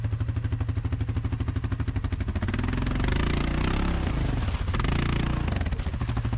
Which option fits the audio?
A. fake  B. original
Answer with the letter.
B